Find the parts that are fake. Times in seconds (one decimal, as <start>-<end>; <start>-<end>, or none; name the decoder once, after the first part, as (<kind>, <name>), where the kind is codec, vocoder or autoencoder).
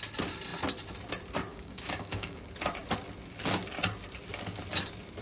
1.5-2.4 (codec, DAC)